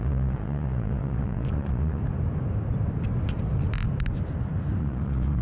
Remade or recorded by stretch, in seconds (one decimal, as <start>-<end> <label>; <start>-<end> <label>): 0.0-2.0 remade; 2.0-4.8 recorded; 4.8-5.4 remade